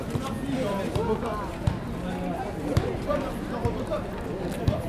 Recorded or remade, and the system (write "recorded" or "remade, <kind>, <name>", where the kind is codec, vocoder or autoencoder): recorded